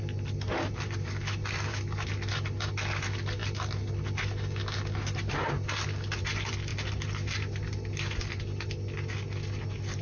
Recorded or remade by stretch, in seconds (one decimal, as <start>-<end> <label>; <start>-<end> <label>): 0.0-10.0 recorded